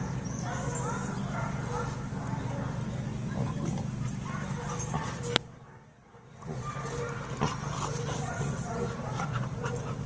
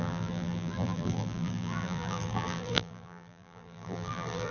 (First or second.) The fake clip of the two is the second